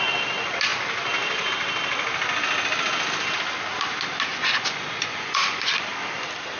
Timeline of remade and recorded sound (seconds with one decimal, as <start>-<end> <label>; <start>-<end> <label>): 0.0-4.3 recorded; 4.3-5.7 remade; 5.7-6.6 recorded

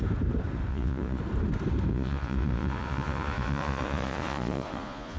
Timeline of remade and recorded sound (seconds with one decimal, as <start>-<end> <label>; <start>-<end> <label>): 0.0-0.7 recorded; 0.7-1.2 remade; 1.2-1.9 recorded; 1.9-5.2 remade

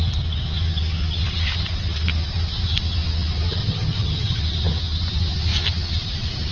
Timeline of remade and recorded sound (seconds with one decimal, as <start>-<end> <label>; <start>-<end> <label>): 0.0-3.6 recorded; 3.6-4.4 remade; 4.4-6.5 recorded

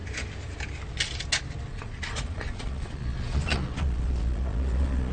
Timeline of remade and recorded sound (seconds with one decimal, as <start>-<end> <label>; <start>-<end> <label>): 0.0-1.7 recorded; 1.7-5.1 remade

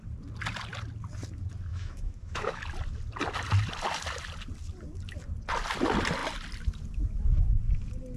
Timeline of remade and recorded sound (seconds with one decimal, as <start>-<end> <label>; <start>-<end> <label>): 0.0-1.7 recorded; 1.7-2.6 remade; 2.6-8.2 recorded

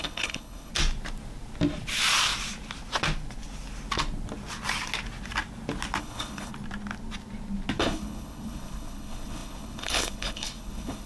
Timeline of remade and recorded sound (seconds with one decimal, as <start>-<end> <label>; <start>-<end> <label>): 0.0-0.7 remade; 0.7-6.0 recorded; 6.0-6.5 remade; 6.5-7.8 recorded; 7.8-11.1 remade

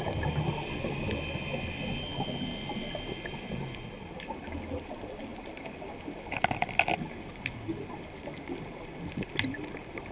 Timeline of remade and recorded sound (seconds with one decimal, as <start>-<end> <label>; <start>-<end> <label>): 0.0-10.1 recorded

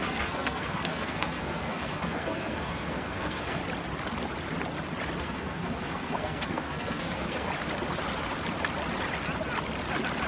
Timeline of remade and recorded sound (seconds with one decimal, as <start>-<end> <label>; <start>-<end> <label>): 0.0-3.6 remade; 3.6-5.2 recorded; 5.2-7.5 remade; 7.5-10.3 recorded